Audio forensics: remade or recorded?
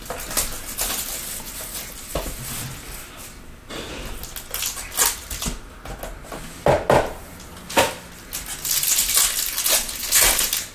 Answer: recorded